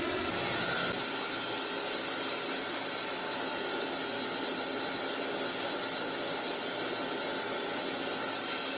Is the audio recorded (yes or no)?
yes